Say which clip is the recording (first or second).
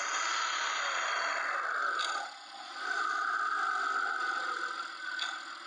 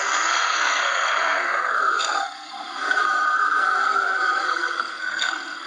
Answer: first